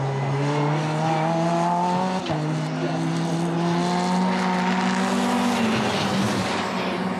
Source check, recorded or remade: recorded